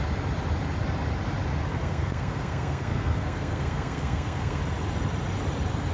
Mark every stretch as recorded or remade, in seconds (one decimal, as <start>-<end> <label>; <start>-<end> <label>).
0.0-1.7 recorded; 1.7-4.6 remade; 4.6-5.9 recorded